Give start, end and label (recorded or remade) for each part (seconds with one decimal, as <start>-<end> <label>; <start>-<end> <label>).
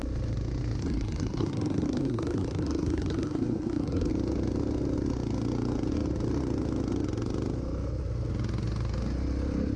0.0-0.8 recorded; 0.8-4.1 remade; 4.1-9.8 recorded